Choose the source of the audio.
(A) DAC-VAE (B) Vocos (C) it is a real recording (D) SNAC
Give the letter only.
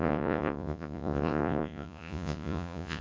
B